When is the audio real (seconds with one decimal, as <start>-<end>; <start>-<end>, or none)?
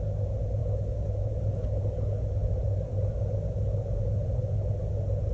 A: 0.0-0.6; 1.3-5.3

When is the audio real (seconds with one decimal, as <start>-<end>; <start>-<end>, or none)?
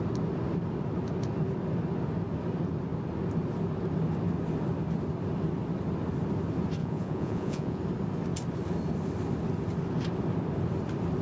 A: 0.0-6.8; 7.8-11.2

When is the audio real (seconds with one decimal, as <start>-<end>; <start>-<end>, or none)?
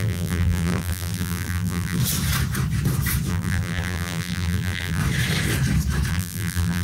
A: 2.0-3.3; 5.0-6.1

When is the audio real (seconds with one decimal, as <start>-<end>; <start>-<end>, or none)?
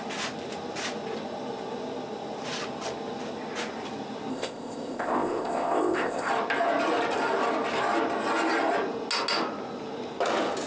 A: 0.0-4.3; 6.3-10.7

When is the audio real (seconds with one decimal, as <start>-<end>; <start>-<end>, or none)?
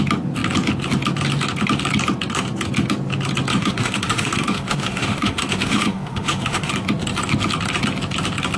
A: 0.0-3.6; 6.7-8.6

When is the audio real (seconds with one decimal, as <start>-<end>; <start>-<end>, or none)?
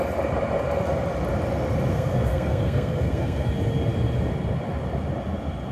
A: 0.0-1.9; 3.5-5.7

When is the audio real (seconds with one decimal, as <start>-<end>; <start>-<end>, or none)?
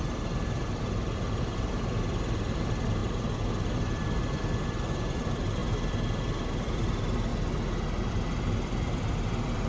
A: 7.3-8.1